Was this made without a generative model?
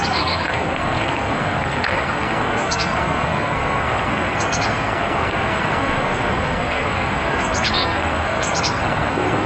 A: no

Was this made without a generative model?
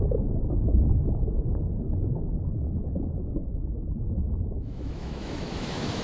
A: no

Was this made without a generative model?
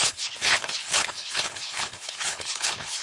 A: no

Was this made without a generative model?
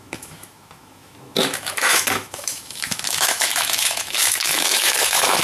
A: no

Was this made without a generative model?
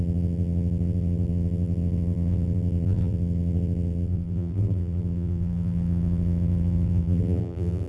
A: no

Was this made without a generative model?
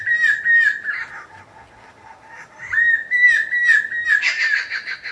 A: yes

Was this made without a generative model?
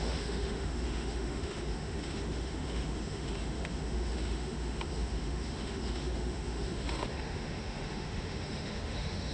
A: no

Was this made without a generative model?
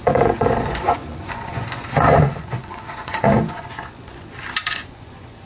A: no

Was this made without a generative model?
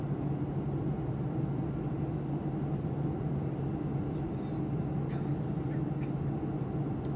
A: yes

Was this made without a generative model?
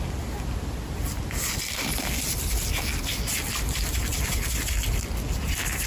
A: yes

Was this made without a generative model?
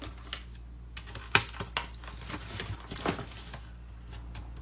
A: yes